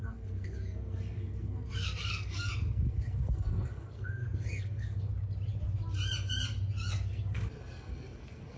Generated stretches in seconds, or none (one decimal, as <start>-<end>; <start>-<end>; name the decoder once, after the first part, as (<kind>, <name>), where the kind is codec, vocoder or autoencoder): 0.0-5.1 (codec, SNAC); 6.9-8.6